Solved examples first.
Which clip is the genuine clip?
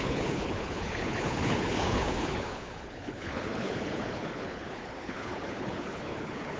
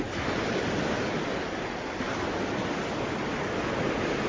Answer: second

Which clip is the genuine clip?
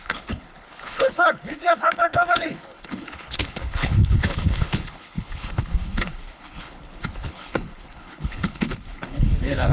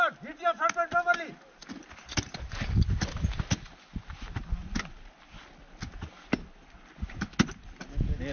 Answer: second